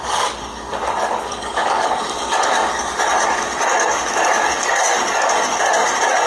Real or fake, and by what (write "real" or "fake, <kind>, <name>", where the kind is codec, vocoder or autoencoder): fake, codec, DAC